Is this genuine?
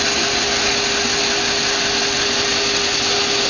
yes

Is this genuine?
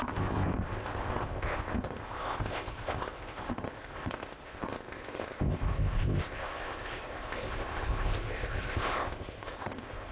no